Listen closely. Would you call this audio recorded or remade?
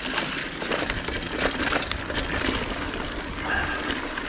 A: recorded